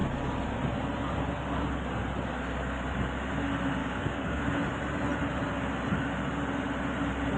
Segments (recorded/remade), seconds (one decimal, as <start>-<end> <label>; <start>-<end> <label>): 0.0-3.8 recorded; 3.8-4.4 remade; 4.4-7.4 recorded